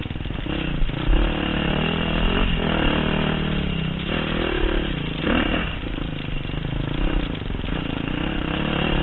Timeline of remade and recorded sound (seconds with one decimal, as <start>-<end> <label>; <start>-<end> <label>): 0.0-9.0 recorded